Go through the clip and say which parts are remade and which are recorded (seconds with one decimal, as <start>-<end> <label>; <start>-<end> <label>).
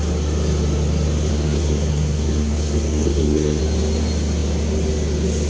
0.0-1.3 recorded; 1.3-3.6 remade; 3.6-5.5 recorded